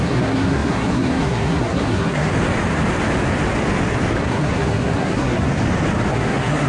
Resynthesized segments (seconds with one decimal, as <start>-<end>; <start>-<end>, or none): 0.0-2.3; 4.1-5.5; 6.1-6.7